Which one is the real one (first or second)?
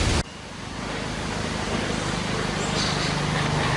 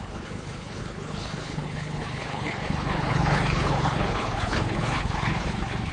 first